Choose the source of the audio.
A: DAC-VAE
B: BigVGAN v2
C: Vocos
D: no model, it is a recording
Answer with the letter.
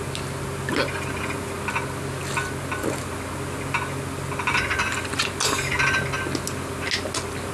D